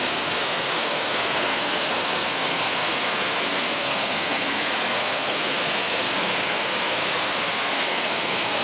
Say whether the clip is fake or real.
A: fake